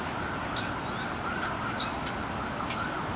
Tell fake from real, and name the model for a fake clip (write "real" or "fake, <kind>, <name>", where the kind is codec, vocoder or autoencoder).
real